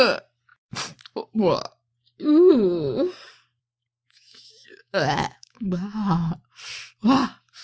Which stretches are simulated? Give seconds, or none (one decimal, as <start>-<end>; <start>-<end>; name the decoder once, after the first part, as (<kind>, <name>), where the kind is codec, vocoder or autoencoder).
3.6-6.3 (autoencoder, DAC-VAE)

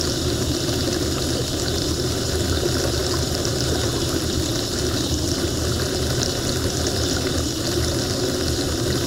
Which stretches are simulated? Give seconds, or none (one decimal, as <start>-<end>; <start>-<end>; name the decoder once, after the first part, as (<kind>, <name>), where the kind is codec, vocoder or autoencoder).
none

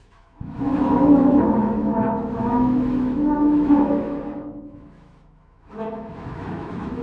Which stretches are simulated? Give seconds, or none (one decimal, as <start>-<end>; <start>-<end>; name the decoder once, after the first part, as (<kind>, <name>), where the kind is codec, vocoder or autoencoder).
0.0-7.0 (autoencoder, DAC-VAE)

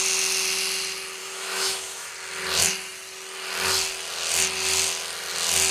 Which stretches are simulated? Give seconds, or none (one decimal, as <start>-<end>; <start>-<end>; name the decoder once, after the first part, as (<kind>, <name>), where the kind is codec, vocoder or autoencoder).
1.2-2.1 (autoencoder, DAC-VAE)